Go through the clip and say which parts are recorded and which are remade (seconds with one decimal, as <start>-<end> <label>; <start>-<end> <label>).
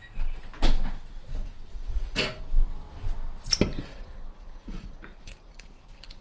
0.0-1.7 recorded; 1.7-2.4 remade; 2.4-3.9 recorded; 3.9-5.8 remade; 5.8-6.2 recorded